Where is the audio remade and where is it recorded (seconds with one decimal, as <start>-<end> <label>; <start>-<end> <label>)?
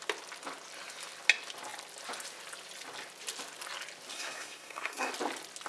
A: 0.0-4.1 recorded; 4.1-5.1 remade; 5.1-5.7 recorded